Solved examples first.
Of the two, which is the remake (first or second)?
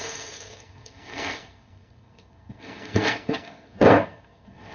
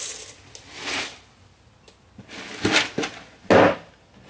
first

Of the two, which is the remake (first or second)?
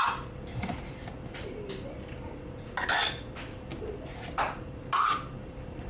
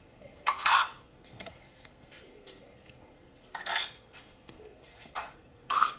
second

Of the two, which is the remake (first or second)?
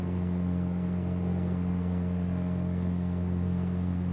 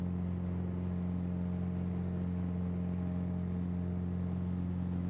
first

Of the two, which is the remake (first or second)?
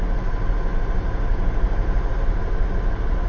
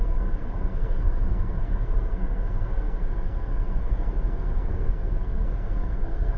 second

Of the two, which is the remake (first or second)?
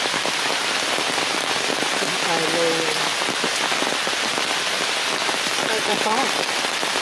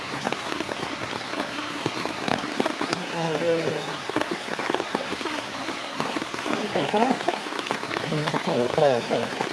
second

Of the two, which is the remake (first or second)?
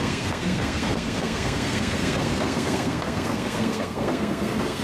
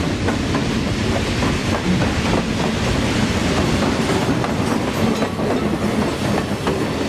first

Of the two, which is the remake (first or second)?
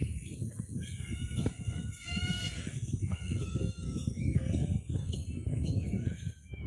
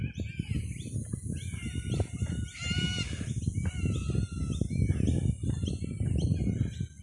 first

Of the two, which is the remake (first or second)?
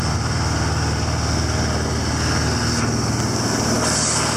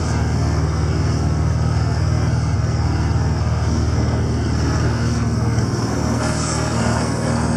second